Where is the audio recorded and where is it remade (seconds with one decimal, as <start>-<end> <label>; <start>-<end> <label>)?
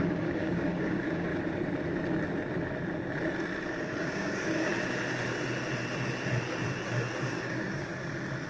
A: 0.0-1.3 remade; 1.3-4.0 recorded; 4.0-4.7 remade; 4.7-7.2 recorded; 7.2-7.9 remade; 7.9-8.5 recorded